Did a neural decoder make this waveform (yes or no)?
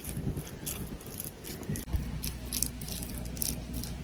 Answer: no